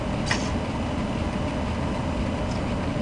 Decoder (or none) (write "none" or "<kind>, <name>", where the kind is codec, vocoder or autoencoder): none